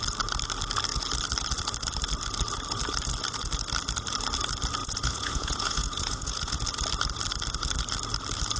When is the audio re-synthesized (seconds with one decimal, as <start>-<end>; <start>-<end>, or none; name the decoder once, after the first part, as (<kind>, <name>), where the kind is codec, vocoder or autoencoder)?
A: 4.8-6.6 (vocoder, Vocos)

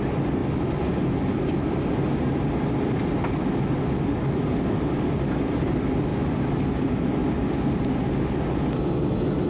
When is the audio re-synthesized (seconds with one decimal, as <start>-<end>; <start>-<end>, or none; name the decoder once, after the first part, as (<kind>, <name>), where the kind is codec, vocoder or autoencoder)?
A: none